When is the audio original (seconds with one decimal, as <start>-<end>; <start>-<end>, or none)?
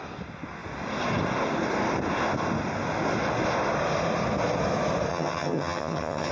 0.0-5.1